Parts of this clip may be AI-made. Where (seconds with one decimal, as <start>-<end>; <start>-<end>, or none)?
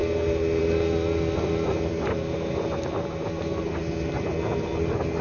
none